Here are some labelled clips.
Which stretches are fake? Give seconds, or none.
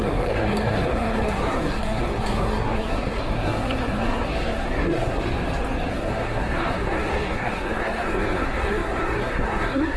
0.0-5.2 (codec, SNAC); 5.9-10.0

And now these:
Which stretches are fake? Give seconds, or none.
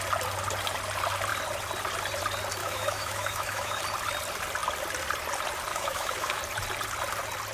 2.6-3.8 (autoencoder, DAC-VAE); 5.7-6.4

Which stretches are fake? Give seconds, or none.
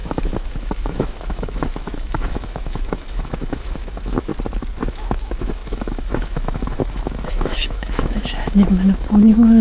0.0-4.3 (autoencoder, DAC-VAE); 4.9-9.6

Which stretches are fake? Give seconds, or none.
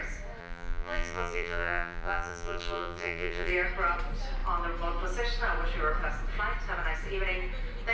0.4-3.5 (vocoder, BigVGAN v2)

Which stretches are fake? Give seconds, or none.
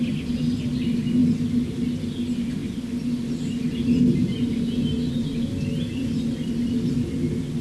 none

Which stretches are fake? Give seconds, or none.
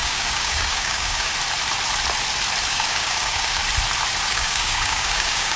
0.0-1.3 (codec, DAC); 2.7-3.6; 4.3-5.6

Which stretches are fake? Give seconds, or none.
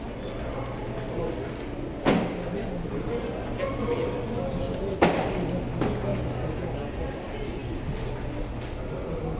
none